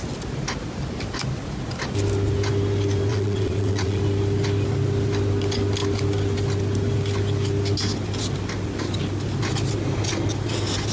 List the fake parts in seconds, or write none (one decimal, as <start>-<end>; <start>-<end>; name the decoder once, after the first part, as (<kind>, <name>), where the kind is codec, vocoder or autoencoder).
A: 3.1-4.0 (vocoder, WaveNeXt)